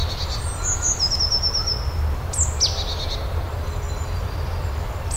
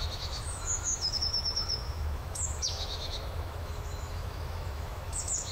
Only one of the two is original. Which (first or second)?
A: first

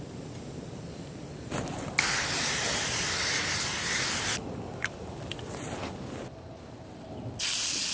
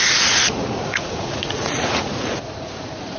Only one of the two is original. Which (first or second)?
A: first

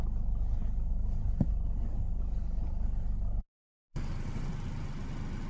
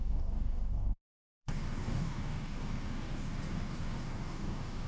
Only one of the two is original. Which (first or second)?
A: first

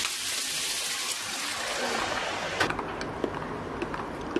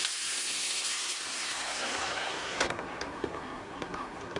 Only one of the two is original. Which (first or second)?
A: first